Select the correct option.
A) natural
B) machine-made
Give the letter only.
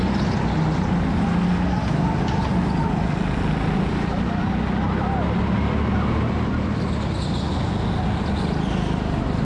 A